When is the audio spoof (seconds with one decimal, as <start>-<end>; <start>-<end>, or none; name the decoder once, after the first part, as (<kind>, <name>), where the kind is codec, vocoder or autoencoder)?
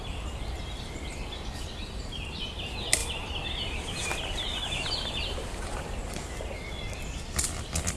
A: 3.0-5.1 (vocoder, BigVGAN v2)